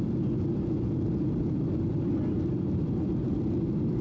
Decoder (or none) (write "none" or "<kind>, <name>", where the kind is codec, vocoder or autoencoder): none